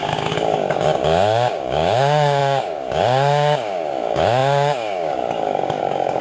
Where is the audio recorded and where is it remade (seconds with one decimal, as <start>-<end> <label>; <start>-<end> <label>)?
0.0-6.2 remade